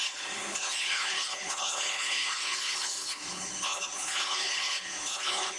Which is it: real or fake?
fake